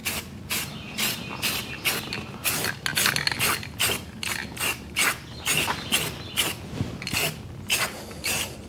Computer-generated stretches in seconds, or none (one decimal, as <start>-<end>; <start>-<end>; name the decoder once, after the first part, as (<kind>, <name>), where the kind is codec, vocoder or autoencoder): none